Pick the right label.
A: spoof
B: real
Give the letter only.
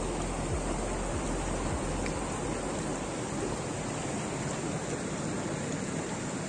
B